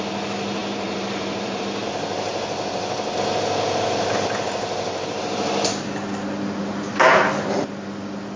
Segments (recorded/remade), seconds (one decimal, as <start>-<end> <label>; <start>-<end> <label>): 0.0-0.6 recorded; 0.6-1.6 remade; 1.6-8.4 recorded